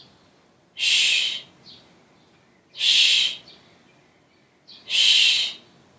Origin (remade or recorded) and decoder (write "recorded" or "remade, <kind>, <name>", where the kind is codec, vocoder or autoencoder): recorded